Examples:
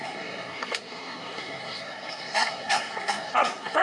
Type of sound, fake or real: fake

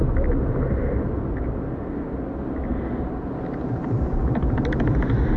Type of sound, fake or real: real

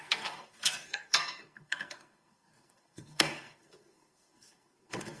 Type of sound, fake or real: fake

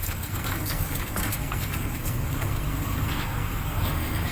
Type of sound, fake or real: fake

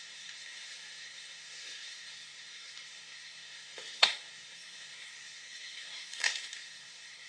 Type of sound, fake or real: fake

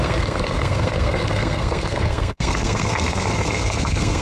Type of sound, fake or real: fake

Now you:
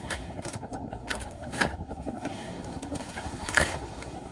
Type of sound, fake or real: fake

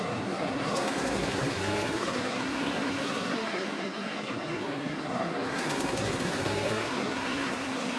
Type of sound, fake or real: fake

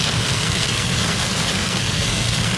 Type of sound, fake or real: fake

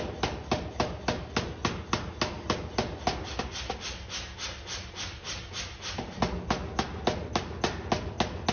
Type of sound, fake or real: real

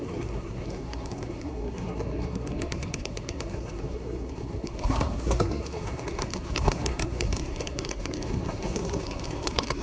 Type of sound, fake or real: fake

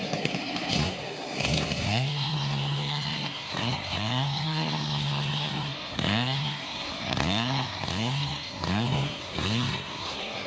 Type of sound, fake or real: fake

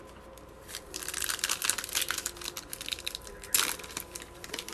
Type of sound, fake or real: real